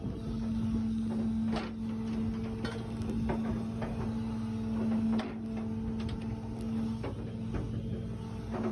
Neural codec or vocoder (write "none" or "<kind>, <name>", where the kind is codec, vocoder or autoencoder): none